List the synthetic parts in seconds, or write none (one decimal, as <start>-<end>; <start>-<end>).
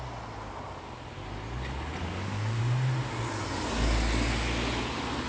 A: 2.0-2.6